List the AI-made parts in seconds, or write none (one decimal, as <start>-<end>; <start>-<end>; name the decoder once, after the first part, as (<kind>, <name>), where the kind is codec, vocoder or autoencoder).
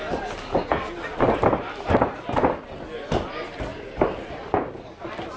1.1-2.2 (vocoder, BigVGAN v2); 3.7-4.7